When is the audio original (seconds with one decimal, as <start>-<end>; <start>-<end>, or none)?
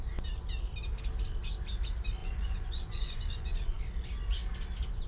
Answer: 0.0-2.2; 3.8-5.1